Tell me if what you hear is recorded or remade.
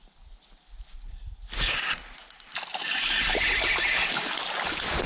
recorded